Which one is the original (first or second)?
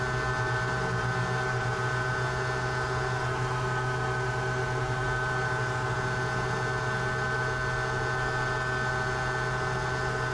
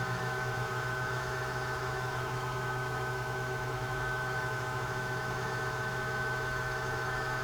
first